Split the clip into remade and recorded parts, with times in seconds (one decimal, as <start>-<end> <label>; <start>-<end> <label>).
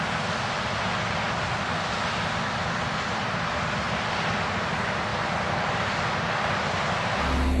0.0-7.6 recorded